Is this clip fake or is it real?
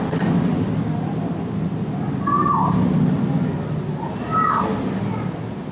real